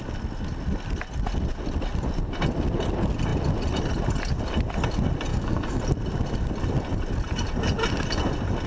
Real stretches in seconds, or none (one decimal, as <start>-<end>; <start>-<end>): 0.0-5.3; 5.8-8.7